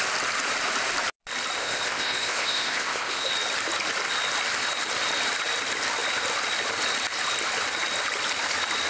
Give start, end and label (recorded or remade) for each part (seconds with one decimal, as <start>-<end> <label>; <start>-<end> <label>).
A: 0.0-1.6 recorded; 1.6-3.3 remade; 3.3-8.9 recorded